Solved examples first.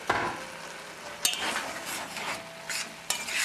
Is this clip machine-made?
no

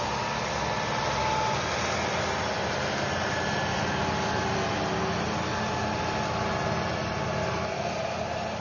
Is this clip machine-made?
no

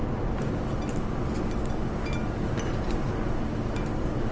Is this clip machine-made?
no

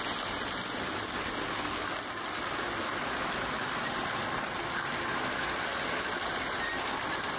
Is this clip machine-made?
no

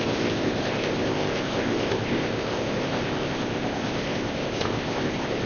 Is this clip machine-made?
yes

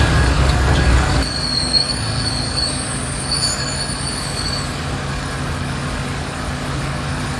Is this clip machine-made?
yes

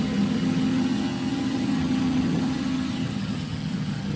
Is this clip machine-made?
yes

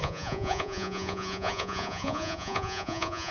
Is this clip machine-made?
yes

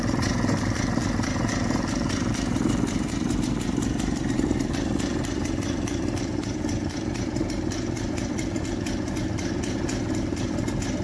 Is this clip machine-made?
yes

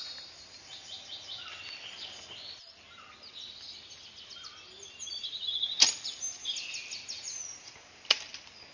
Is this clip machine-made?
no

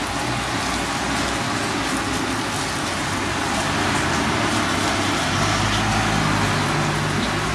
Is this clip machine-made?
no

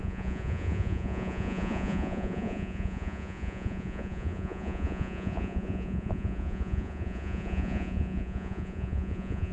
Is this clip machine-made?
yes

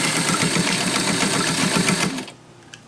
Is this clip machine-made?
yes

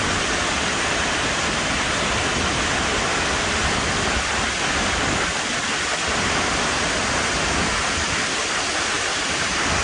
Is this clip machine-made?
no